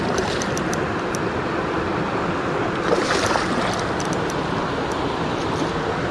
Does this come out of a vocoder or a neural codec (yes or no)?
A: no